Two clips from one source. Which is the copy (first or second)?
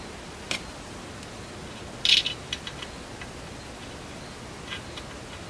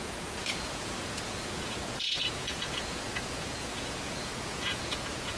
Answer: second